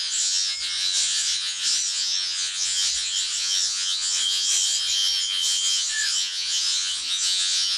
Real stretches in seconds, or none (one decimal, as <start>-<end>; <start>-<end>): none